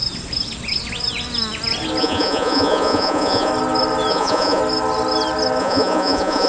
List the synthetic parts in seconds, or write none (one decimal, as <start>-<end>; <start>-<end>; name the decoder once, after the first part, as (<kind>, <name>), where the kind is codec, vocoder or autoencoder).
2.0-3.5 (vocoder, Vocos); 4.1-4.6; 5.6-6.5